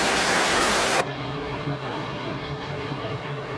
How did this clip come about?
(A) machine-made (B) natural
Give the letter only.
A